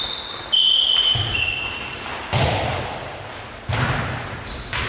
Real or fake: real